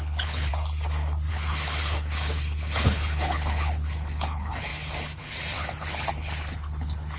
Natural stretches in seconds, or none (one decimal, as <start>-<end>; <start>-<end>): 0.5-1.3

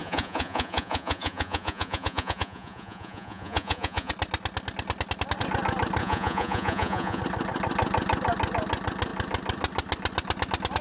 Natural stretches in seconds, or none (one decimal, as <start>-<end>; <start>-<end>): 4.1-6.0; 7.2-10.8